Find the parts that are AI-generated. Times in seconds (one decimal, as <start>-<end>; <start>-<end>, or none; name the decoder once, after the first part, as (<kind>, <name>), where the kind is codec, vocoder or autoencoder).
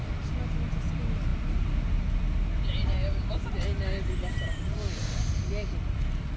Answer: none